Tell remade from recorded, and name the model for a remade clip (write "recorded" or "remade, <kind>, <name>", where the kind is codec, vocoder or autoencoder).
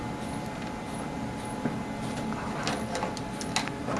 recorded